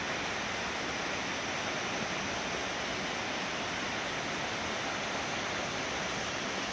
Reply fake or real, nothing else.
real